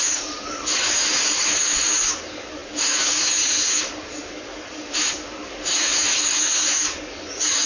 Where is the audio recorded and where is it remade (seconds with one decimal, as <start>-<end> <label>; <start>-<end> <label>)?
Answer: 0.0-7.7 remade